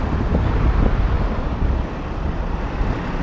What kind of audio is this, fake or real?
real